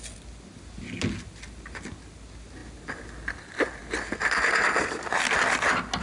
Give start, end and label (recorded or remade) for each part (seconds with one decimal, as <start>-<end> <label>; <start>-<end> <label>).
0.0-6.0 recorded